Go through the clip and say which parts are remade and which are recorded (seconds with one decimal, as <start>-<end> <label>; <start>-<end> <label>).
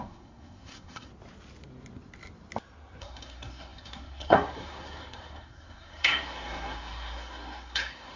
0.0-1.1 remade; 1.1-3.0 recorded; 3.0-8.2 remade